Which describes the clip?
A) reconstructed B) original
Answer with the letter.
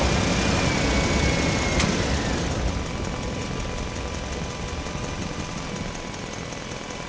B